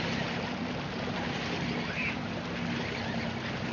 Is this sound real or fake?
real